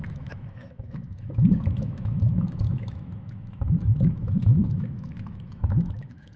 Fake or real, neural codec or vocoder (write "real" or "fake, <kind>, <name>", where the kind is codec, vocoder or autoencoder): fake, autoencoder, DAC-VAE